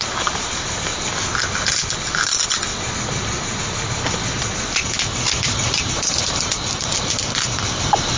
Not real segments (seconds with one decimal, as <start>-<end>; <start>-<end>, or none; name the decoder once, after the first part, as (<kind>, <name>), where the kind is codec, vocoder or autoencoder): 0.0-0.9 (vocoder, BigVGAN v2); 5.4-8.2